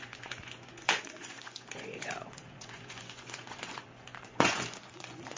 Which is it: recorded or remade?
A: remade